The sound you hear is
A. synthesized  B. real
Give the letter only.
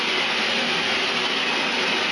B